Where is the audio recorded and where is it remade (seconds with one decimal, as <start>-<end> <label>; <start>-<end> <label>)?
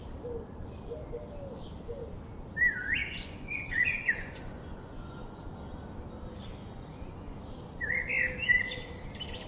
0.0-3.0 recorded; 3.0-5.4 remade; 5.4-6.6 recorded; 6.6-7.4 remade; 7.4-9.5 recorded